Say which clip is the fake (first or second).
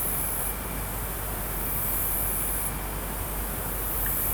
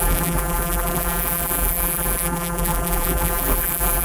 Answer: second